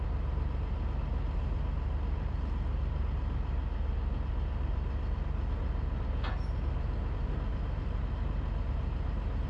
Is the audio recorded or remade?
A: recorded